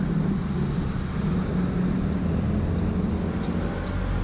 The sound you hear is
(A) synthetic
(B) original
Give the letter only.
B